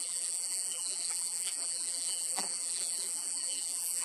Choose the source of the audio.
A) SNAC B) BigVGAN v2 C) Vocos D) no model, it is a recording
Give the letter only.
B